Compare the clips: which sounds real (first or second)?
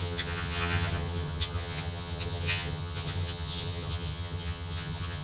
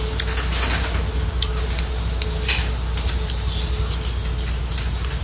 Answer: second